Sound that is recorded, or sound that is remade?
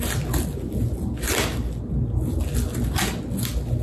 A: recorded